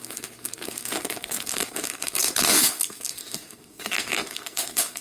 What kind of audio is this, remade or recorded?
remade